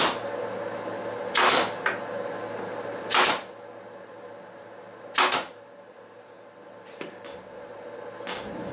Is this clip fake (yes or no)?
no